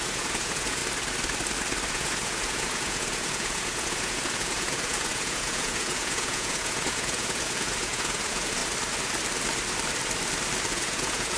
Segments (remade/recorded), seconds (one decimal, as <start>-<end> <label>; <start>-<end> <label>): 0.0-0.8 remade; 0.8-1.9 recorded; 1.9-8.6 remade; 8.6-10.7 recorded; 10.7-11.4 remade